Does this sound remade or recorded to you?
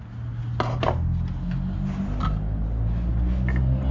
recorded